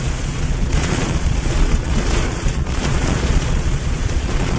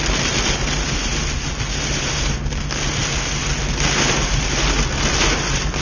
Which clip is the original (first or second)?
second